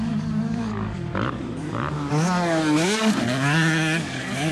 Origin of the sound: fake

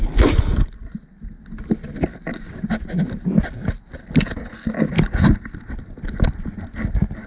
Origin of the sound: real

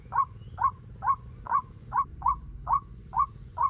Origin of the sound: fake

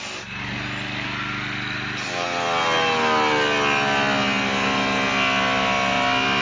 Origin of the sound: real